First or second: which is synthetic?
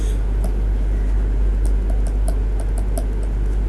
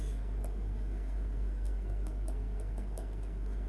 second